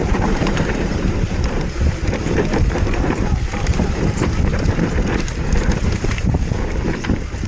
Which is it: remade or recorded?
remade